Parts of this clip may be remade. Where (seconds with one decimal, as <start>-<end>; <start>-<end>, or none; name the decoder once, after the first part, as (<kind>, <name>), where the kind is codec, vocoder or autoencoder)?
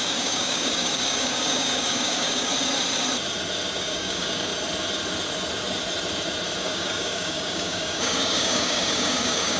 0.0-2.5 (codec, DAC); 3.8-4.5; 6.6-9.6